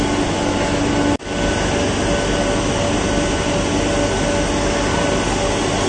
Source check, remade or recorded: recorded